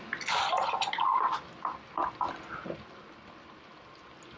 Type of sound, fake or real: real